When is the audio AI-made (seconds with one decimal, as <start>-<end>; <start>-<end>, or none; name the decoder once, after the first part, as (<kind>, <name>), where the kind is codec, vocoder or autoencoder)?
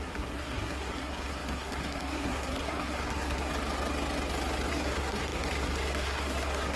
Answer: 0.0-3.5 (codec, SNAC); 4.7-6.8